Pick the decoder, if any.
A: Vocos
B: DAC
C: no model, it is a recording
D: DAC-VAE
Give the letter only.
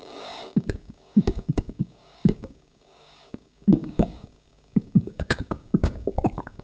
B